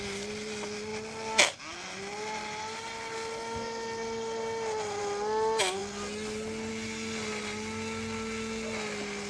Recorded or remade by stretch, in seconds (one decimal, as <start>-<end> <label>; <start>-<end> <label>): 0.0-9.3 recorded